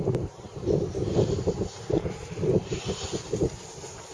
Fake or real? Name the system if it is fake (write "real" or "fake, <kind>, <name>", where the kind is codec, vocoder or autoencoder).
real